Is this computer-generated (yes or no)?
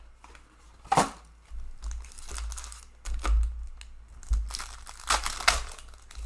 no